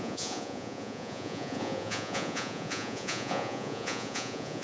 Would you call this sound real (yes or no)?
no